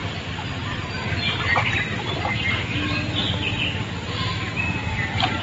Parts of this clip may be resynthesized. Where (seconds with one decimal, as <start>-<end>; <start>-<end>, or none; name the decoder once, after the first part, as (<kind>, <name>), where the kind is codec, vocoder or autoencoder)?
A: 0.0-3.2 (vocoder, BigVGAN v2)